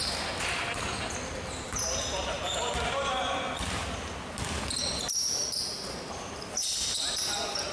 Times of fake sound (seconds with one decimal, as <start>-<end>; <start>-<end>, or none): none